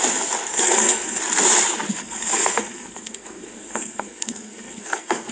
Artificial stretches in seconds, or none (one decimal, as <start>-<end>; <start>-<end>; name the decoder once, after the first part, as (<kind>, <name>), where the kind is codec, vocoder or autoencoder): 0.5-1.2 (codec, SNAC); 1.9-5.3